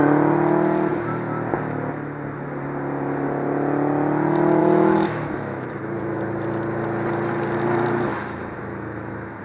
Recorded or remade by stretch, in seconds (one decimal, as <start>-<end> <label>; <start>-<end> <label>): 0.0-4.6 recorded; 4.6-6.2 remade; 6.2-8.1 recorded; 8.1-9.4 remade